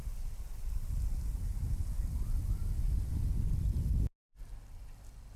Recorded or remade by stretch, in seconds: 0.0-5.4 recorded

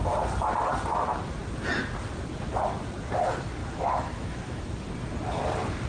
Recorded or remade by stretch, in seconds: 0.0-3.6 recorded; 3.6-4.6 remade; 4.6-5.9 recorded

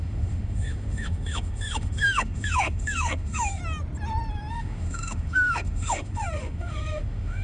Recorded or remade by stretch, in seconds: 0.0-3.6 remade; 3.6-4.5 recorded; 4.5-7.4 remade

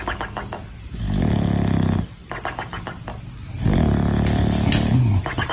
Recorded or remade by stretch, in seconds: 0.0-5.5 recorded

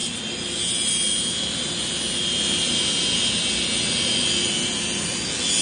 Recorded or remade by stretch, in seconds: 0.0-5.6 recorded

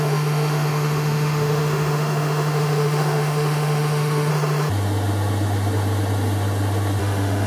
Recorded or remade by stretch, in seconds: 0.0-4.3 remade; 4.3-7.0 recorded; 7.0-7.5 remade

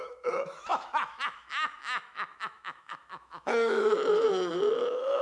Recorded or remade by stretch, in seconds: 0.0-5.2 remade

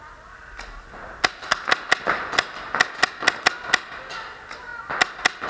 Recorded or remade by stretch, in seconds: 0.0-5.5 recorded